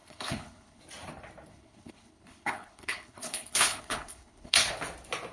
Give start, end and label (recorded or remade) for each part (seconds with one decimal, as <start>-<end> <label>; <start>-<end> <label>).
0.0-0.8 remade; 0.8-1.5 recorded; 1.5-4.7 remade; 4.7-5.3 recorded